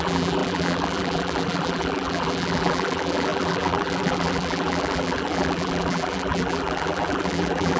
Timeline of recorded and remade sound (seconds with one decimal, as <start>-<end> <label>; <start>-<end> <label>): 0.0-7.8 remade